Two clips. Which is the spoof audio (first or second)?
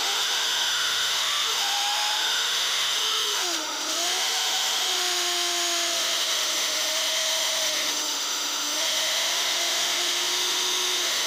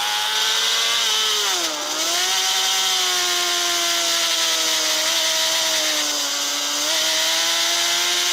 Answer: first